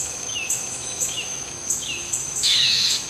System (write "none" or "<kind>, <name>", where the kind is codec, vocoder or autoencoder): autoencoder, DAC-VAE